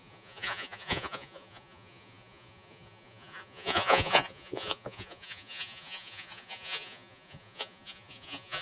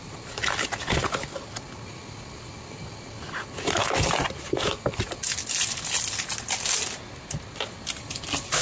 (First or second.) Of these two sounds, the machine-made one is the first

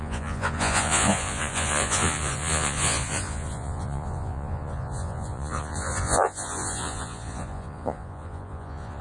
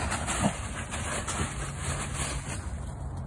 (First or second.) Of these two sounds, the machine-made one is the first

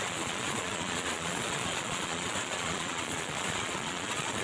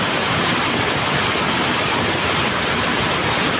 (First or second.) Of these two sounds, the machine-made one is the first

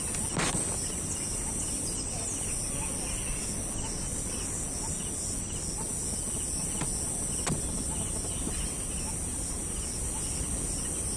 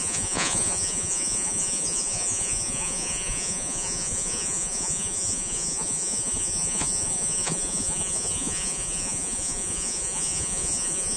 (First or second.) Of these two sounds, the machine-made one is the second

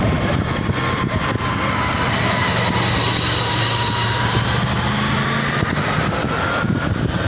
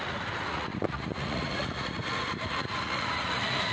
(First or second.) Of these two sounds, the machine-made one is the second